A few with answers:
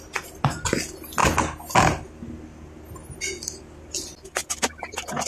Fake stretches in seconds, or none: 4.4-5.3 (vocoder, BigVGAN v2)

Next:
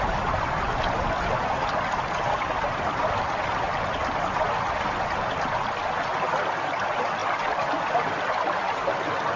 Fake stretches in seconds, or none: none

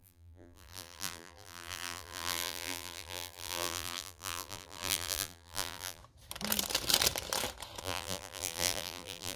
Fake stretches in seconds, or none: 0.0-6.0 (vocoder, BigVGAN v2); 7.8-9.4

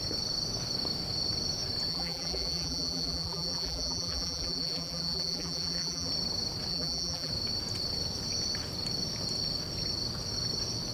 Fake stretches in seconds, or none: 1.9-6.1 (vocoder, BigVGAN v2); 6.7-7.3

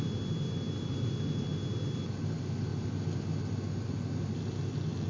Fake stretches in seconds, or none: none

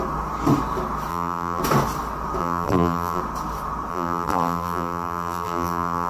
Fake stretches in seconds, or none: 1.1-1.6 (vocoder, BigVGAN v2); 2.4-3.2; 3.9-6.1

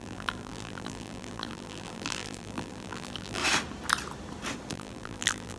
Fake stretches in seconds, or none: 0.0-3.4 (vocoder, BigVGAN v2); 4.7-5.6